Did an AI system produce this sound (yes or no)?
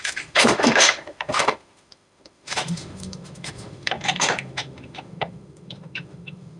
yes